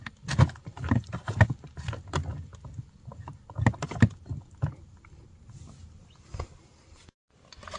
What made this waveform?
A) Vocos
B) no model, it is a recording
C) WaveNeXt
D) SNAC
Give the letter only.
B